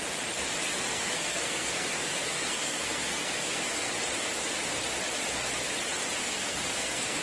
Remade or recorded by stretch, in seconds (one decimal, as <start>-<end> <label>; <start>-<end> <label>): 0.0-0.9 recorded; 0.9-3.9 remade; 3.9-6.2 recorded; 6.2-7.2 remade